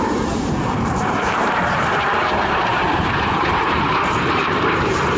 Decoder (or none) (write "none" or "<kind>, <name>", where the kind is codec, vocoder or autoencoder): vocoder, BigVGAN v2